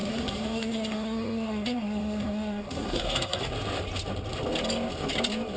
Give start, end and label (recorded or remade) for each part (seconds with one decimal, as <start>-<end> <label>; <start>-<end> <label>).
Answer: 0.0-3.4 remade; 3.4-5.6 recorded